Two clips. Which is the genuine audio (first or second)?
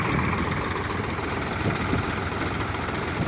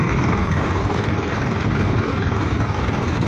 first